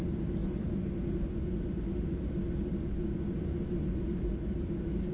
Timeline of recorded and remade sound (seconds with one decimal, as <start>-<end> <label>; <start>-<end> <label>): 0.0-5.1 recorded

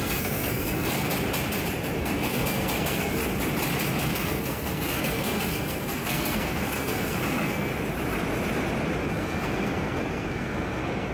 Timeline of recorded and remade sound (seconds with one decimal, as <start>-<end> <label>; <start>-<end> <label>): 0.0-1.1 remade; 1.1-2.0 recorded; 2.0-3.2 remade; 3.2-4.0 recorded; 4.0-7.7 remade; 7.7-9.1 recorded; 9.1-11.1 remade

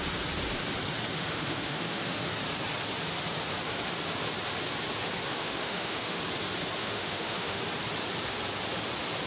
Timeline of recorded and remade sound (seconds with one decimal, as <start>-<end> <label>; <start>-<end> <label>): 0.0-1.1 recorded; 1.1-2.3 remade; 2.3-5.3 recorded; 5.3-6.2 remade; 6.2-6.8 recorded; 6.8-7.6 remade; 7.6-9.3 recorded

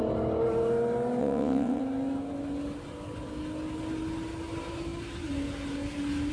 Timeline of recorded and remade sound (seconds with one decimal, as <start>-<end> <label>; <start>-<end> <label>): 0.0-1.2 recorded; 1.2-1.8 remade; 1.8-6.3 recorded